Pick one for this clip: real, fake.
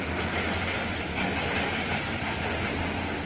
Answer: real